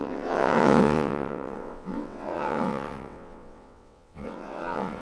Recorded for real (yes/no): no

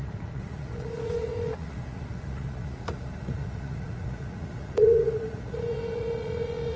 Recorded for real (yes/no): no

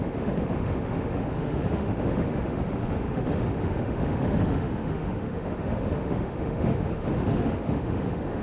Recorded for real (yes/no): no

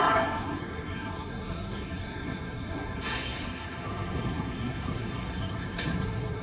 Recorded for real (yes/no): no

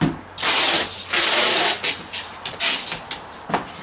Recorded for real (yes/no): yes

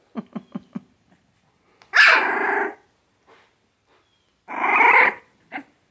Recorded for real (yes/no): yes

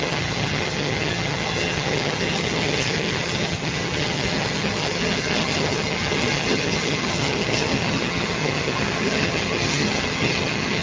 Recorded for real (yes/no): no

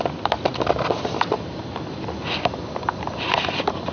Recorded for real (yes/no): yes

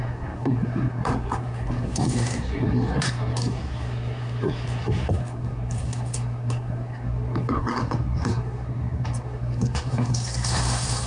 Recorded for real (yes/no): no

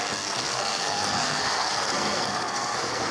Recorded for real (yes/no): no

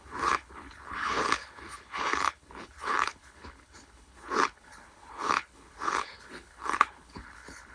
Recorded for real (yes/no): no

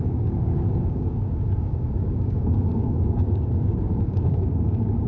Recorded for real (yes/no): no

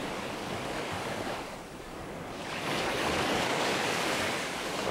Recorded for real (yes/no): no